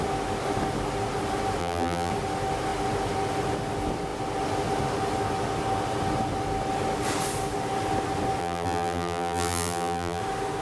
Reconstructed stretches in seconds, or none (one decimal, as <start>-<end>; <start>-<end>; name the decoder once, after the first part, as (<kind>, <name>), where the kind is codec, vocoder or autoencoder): 1.6-2.1 (vocoder, BigVGAN v2); 8.4-10.2